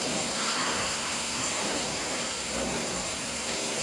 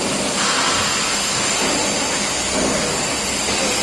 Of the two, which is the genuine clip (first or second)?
second